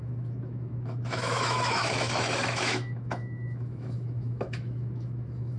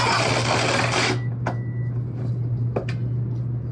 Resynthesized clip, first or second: first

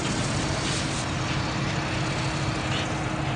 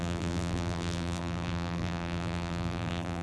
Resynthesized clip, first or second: second